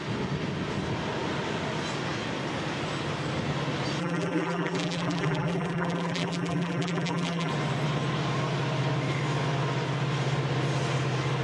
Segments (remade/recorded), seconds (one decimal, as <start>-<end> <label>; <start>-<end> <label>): 0.0-4.0 recorded; 4.0-7.5 remade; 7.5-11.4 recorded

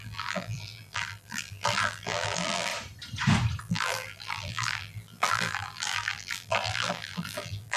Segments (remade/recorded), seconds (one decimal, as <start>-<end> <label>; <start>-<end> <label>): 0.0-2.7 remade; 2.7-3.6 recorded; 3.6-7.8 remade